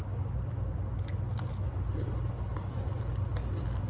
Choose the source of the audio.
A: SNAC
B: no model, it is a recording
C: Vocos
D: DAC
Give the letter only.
B